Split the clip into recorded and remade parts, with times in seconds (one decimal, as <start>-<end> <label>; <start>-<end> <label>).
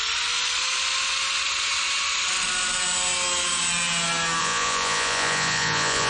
0.0-4.4 recorded; 4.4-6.1 remade